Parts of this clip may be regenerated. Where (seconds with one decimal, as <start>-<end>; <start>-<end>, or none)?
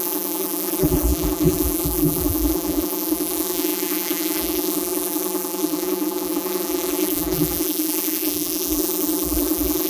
0.0-9.9